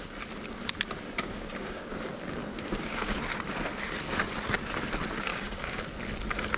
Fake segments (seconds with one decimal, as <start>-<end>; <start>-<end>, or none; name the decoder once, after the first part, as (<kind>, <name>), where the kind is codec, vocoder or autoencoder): 1.2-1.9 (codec, DAC); 2.5-3.2; 5.3-5.8